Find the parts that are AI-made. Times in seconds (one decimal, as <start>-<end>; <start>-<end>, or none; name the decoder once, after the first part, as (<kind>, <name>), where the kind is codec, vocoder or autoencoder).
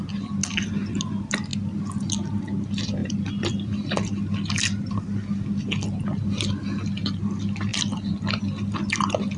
3.0-5.6 (vocoder, BigVGAN v2)